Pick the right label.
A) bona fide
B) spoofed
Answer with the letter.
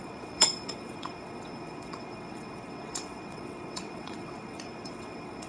B